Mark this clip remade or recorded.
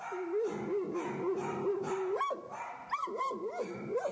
recorded